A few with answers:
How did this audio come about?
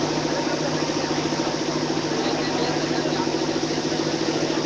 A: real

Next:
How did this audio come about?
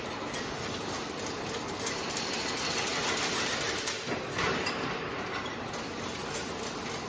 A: real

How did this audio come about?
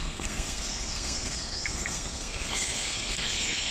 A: fake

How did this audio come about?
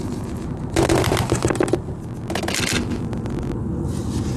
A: real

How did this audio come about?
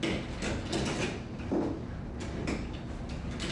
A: real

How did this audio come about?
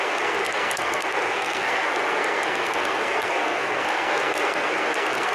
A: fake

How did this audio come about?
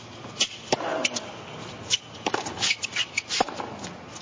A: real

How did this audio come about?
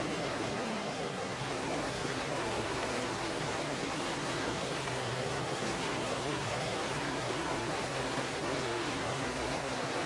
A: fake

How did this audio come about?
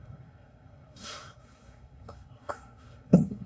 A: fake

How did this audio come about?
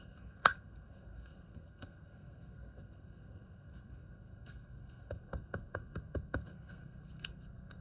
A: fake